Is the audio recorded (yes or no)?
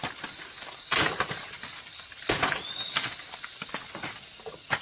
yes